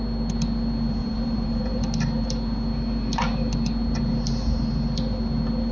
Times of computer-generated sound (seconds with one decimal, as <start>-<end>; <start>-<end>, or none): 1.0-1.8